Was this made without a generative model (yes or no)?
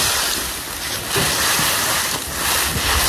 yes